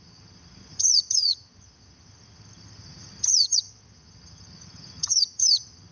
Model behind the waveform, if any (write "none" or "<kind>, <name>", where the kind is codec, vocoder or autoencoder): vocoder, HiFi-GAN